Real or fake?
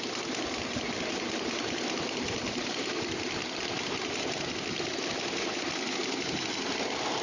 real